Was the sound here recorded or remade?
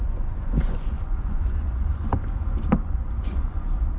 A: remade